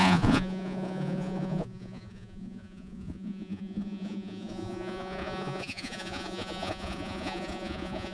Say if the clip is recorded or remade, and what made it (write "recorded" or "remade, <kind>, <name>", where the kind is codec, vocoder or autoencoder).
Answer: remade, vocoder, Vocos